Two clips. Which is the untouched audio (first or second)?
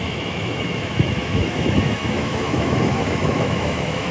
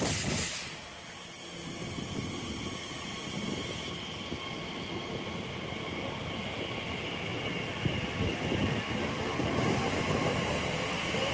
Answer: second